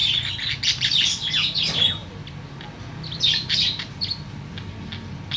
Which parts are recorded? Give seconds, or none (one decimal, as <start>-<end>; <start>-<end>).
0.0-5.4